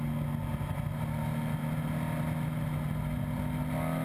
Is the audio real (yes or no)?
yes